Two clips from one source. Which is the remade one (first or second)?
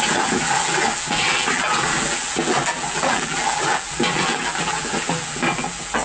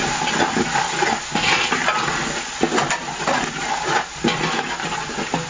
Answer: first